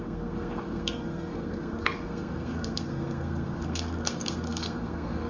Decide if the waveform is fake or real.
fake